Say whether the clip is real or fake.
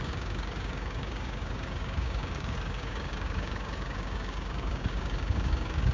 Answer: fake